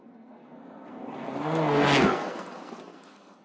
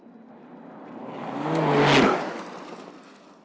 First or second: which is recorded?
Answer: second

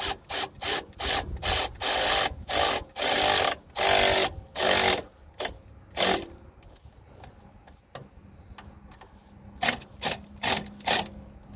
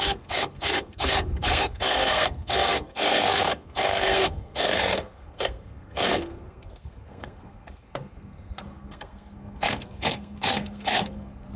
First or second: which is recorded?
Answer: first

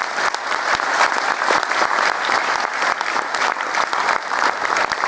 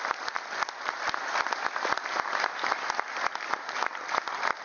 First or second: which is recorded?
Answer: first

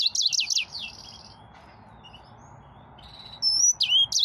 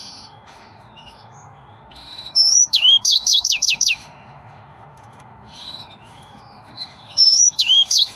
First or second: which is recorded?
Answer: first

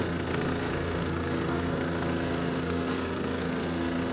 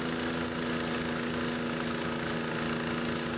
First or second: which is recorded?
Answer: second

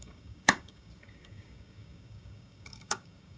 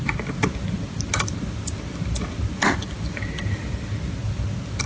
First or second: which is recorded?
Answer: second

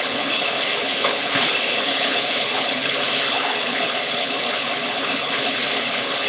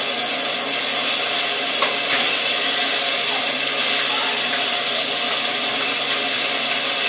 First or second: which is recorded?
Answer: second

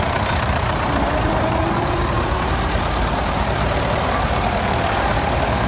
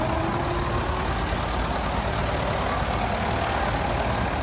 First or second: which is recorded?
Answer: second